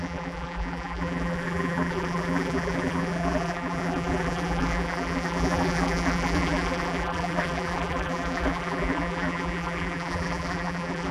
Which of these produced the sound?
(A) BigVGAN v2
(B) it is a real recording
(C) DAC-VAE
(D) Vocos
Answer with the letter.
A